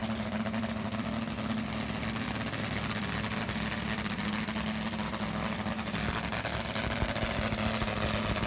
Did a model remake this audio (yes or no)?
no